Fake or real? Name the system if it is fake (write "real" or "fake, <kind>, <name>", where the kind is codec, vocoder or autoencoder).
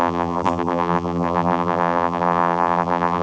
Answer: fake, vocoder, BigVGAN v2